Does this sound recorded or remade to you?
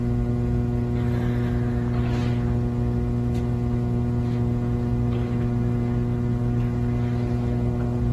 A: recorded